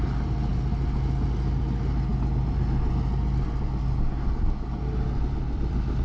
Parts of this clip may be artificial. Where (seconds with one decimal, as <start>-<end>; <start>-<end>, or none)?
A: none